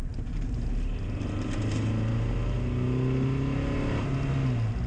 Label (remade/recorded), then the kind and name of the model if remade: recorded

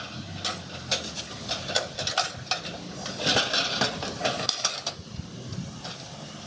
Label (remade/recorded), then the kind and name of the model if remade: recorded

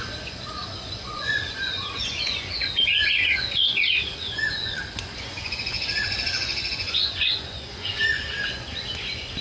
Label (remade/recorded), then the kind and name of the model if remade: remade, vocoder, Vocos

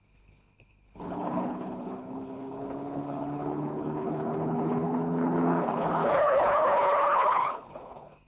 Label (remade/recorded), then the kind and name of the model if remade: remade, codec, HILCodec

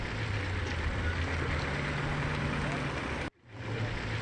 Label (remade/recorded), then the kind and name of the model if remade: recorded